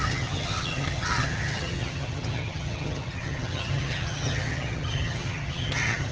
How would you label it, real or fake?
fake